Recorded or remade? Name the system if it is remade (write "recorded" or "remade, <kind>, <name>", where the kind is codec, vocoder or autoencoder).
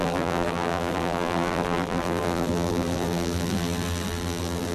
remade, vocoder, BigVGAN v2